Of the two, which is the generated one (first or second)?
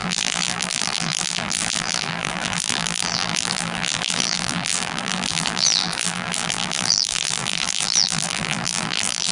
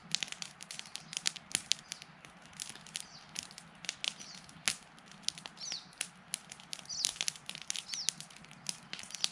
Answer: first